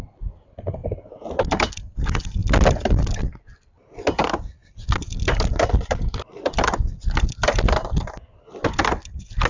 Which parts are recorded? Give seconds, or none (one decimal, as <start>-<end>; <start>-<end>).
0.8-1.7; 2.4-3.2